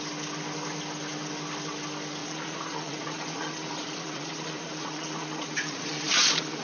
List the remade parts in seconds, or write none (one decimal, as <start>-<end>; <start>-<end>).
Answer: 2.2-6.6